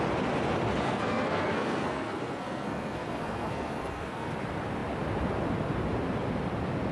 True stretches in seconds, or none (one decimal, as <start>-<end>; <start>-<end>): 0.0-0.8; 4.3-6.9